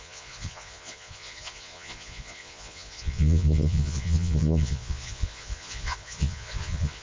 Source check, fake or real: fake